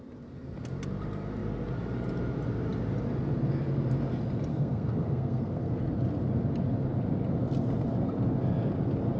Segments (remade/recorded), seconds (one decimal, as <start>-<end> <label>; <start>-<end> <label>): 0.0-4.5 recorded; 4.5-5.8 remade; 5.8-9.2 recorded